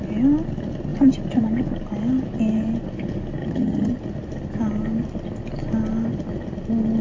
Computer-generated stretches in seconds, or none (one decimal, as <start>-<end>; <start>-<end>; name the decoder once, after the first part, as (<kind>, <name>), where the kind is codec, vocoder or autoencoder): 3.4-3.9 (vocoder, HiFi-GAN)